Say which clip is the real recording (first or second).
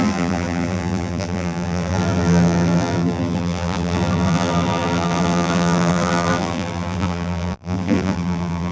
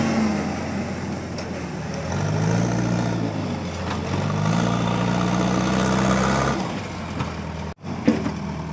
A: second